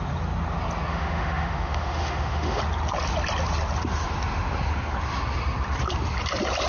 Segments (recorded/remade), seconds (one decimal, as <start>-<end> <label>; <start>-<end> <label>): 0.0-0.9 recorded; 0.9-2.6 remade; 2.6-6.7 recorded